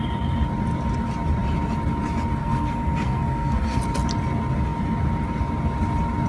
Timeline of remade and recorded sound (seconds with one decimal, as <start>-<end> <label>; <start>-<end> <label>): 0.0-2.4 recorded; 2.4-3.8 remade; 3.8-6.3 recorded